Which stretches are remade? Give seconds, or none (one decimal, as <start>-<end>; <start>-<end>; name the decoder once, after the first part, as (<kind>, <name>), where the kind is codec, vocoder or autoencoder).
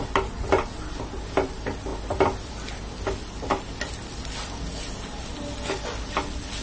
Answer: none